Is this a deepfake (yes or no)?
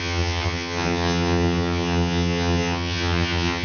yes